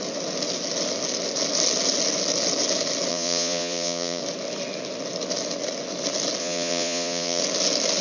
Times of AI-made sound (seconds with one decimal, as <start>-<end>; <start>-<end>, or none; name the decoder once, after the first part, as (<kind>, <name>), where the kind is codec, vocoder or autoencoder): 3.1-4.2 (vocoder, Vocos); 6.4-7.4